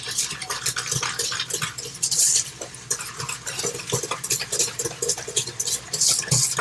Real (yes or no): no